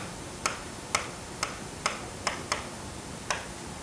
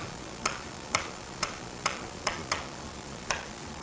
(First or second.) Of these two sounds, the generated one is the second